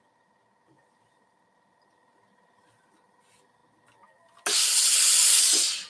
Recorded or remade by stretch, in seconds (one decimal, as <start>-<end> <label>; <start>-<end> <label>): 0.0-5.9 recorded